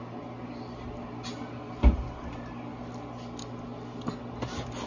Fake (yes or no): no